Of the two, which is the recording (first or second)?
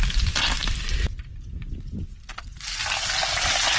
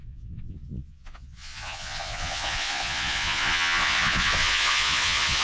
first